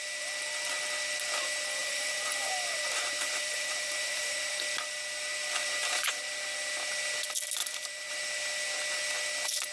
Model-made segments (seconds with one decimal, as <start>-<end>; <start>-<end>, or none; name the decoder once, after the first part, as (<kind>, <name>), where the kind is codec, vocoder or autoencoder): 1.8-4.5 (vocoder, BigVGAN v2); 5.6-6.2; 7.6-8.1